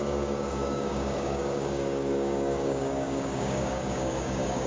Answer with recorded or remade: remade